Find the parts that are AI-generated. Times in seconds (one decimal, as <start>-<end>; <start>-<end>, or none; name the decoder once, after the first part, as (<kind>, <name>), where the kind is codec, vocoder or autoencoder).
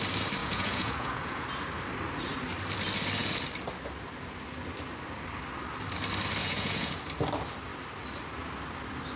0.4-1.4 (vocoder, Vocos); 6.4-7.0